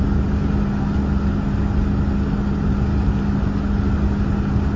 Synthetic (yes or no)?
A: no